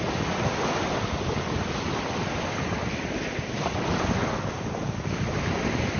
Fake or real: real